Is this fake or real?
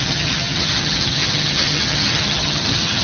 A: fake